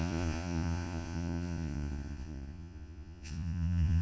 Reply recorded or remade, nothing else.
remade